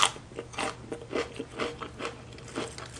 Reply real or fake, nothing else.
real